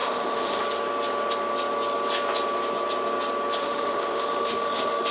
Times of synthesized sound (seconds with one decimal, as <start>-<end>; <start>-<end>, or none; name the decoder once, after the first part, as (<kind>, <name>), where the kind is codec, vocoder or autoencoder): 0.0-0.6 (autoencoder, DAC-VAE); 3.6-5.1